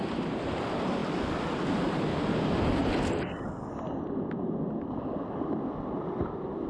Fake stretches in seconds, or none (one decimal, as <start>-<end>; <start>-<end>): none